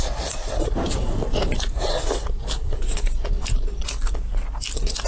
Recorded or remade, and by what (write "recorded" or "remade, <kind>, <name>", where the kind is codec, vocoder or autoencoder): recorded